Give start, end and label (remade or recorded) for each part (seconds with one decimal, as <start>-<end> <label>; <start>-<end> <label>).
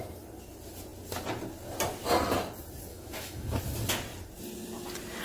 0.0-2.9 recorded; 2.9-3.6 remade; 3.6-5.2 recorded